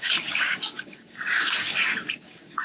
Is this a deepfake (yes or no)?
yes